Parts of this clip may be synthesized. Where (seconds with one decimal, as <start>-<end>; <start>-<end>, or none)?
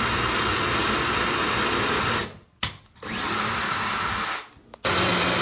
none